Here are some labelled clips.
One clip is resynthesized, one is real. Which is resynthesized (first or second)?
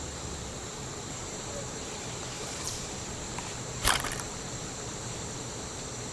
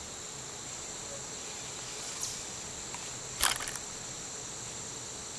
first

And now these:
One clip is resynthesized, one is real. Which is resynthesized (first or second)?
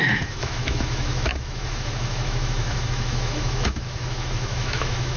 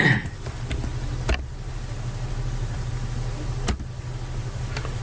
first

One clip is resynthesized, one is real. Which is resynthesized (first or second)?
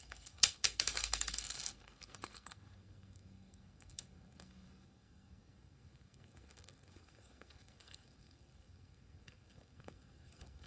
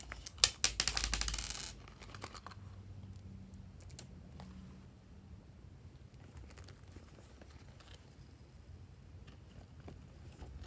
first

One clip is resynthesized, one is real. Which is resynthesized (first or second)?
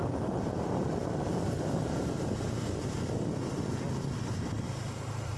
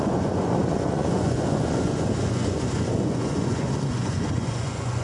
second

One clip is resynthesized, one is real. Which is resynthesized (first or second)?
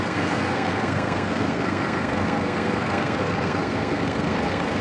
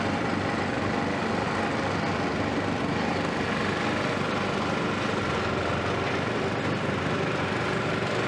first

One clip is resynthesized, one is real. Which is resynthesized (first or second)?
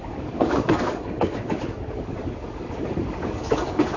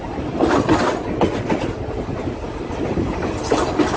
first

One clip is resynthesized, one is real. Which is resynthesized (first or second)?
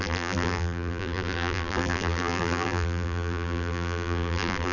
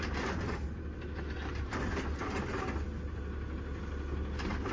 first